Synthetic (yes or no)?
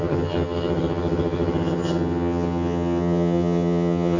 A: yes